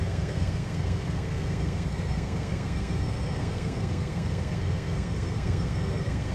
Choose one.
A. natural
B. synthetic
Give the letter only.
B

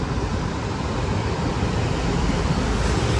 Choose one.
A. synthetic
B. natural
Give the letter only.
B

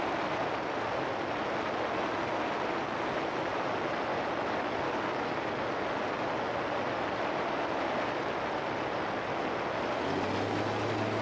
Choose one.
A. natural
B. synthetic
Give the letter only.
A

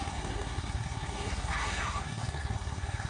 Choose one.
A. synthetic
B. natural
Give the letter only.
A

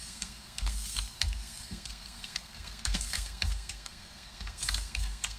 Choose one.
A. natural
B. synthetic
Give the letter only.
B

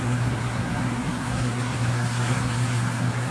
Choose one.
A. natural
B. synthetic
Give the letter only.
B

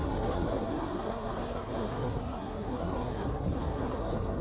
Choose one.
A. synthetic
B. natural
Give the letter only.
A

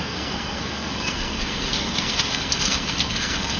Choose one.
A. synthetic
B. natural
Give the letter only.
A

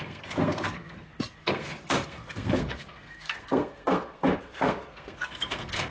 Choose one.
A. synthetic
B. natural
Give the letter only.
A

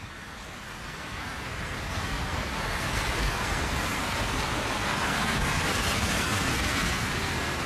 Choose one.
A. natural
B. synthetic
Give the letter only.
B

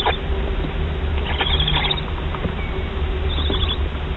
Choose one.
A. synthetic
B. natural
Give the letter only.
B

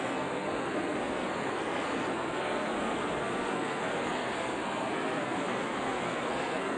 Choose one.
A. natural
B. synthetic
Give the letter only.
B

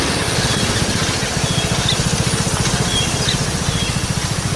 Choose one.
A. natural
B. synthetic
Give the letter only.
A